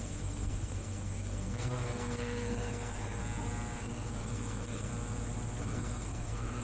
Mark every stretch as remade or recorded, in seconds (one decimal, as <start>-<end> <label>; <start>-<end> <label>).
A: 0.0-3.2 remade; 3.2-3.8 recorded; 3.8-4.9 remade; 4.9-5.6 recorded; 5.6-6.6 remade